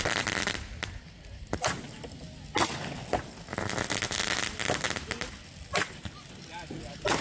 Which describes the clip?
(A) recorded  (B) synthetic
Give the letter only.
A